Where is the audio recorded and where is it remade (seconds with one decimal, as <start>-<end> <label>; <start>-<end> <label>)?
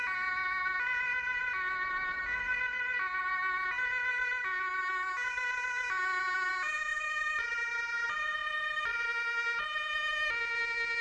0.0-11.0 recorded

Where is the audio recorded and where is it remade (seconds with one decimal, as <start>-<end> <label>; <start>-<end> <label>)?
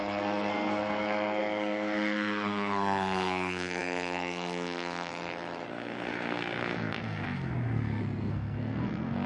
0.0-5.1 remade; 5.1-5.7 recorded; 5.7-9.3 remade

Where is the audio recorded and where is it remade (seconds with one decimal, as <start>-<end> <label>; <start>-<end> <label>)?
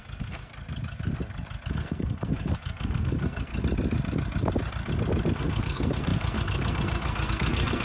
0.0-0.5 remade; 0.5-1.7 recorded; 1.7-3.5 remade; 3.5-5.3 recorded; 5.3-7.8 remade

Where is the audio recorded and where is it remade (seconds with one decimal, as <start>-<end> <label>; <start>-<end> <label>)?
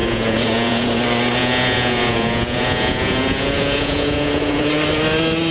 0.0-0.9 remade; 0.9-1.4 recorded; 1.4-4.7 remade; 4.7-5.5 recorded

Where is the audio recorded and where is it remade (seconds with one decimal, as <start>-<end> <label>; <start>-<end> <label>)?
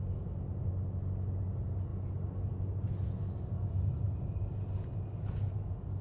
0.0-6.0 recorded